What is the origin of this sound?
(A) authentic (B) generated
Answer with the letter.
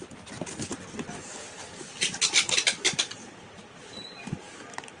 A